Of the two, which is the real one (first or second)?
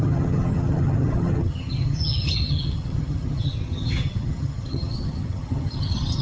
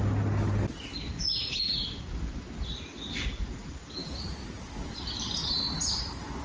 second